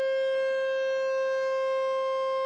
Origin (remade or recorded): recorded